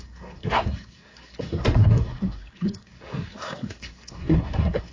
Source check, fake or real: fake